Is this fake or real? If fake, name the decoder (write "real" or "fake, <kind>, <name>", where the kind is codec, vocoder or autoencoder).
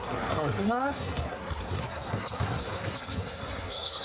fake, codec, SNAC